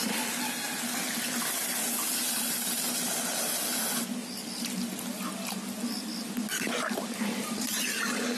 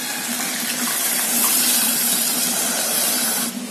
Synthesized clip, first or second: second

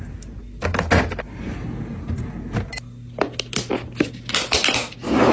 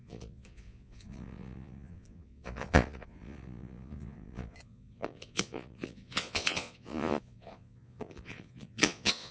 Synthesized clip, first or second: second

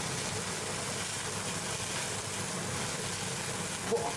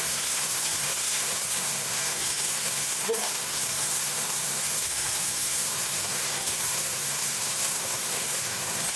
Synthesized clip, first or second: second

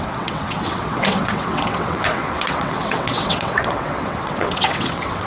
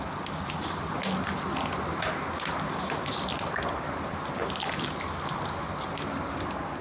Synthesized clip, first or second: first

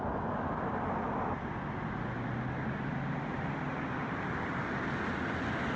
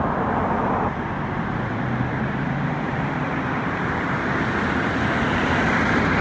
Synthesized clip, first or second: second